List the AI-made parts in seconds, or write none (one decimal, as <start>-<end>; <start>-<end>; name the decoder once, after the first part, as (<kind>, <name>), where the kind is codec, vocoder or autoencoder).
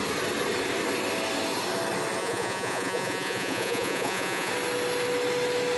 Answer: 2.2-4.5 (vocoder, Vocos)